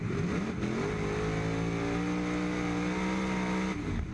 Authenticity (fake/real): real